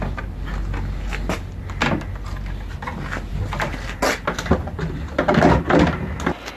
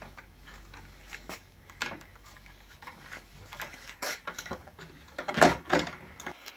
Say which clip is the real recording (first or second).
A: first